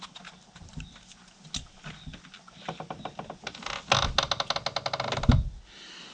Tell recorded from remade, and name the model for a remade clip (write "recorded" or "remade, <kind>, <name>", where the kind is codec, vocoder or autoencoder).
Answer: recorded